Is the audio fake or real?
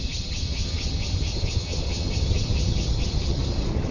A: fake